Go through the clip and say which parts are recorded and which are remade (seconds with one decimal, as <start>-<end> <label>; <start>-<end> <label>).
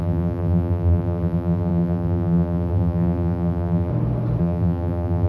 0.0-3.9 remade; 3.9-4.4 recorded; 4.4-5.3 remade